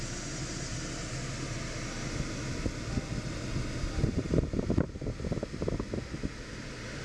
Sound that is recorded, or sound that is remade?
recorded